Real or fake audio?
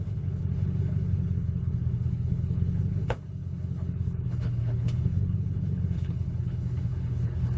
fake